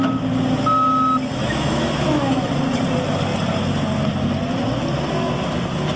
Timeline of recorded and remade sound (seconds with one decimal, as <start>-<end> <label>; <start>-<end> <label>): 0.0-1.3 recorded; 1.3-2.5 remade; 2.5-6.0 recorded